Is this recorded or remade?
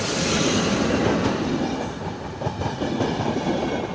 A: recorded